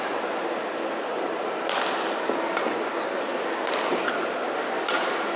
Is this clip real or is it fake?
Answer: real